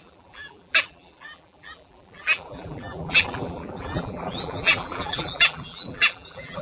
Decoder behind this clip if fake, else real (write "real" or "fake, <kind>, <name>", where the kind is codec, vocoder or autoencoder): fake, vocoder, BigVGAN v2